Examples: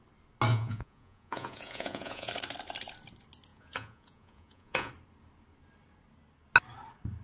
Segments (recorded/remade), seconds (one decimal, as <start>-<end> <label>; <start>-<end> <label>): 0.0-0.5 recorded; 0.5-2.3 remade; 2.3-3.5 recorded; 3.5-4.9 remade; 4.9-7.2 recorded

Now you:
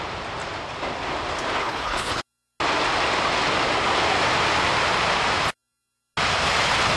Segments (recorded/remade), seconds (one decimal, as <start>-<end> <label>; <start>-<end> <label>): 0.0-1.6 recorded; 1.6-2.2 remade; 2.2-7.0 recorded

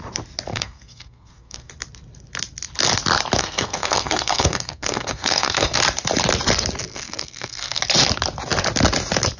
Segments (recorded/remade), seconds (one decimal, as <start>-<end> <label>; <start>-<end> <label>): 0.0-0.5 recorded; 0.5-1.7 remade; 1.7-3.4 recorded; 3.4-5.8 remade; 5.8-6.9 recorded; 6.9-7.8 remade; 7.8-9.4 recorded